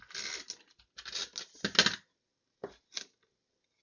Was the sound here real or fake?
real